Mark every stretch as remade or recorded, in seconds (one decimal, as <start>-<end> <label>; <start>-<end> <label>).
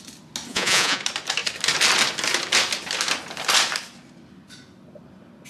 0.0-0.5 recorded; 0.5-1.0 remade; 1.0-5.5 recorded